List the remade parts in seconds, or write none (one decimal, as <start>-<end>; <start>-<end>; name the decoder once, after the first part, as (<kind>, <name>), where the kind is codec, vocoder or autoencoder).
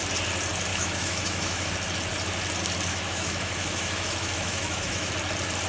0.7-1.7 (autoencoder, DAC-VAE); 2.9-5.1